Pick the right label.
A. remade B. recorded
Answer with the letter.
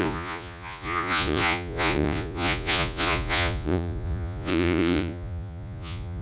A